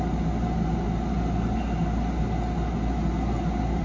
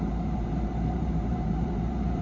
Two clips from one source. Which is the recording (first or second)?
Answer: first